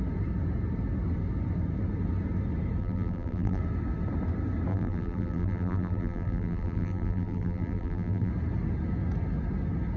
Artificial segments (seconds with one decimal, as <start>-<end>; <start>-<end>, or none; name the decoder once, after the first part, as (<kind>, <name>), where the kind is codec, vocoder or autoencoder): 2.8-3.6 (vocoder, BigVGAN v2); 4.7-8.3